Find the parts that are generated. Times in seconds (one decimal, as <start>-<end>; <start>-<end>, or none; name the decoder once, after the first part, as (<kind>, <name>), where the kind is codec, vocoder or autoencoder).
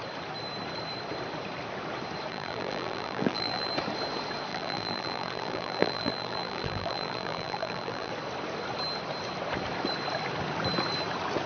2.3-3.7 (vocoder, BigVGAN v2); 4.5-8.1